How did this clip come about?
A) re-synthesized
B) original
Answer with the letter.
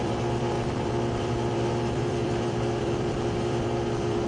A